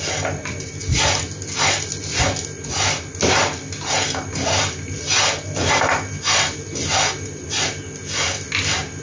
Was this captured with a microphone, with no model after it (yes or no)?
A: yes